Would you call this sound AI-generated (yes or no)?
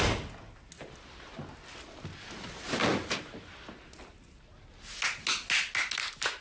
no